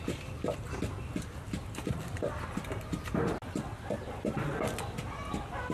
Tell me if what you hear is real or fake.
real